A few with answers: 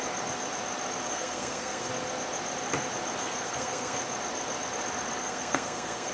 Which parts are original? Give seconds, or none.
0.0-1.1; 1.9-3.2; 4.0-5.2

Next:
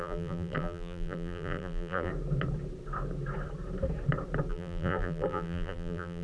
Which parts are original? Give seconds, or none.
2.1-4.5